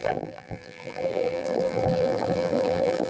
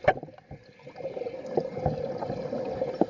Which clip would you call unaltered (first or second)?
second